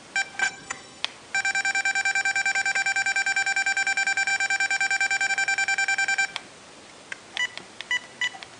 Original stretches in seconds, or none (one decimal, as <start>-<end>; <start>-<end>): 0.0-0.4; 1.0-8.6